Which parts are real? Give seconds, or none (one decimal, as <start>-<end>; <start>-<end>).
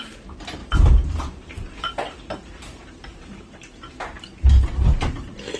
0.0-0.6; 3.4-5.6